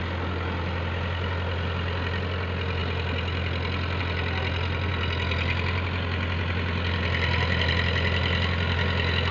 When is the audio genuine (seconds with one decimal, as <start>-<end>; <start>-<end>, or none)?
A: 0.0-9.3